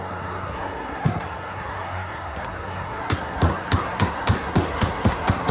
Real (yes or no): no